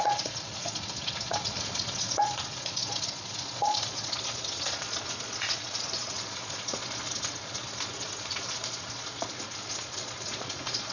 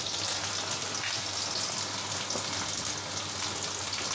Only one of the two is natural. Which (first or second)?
second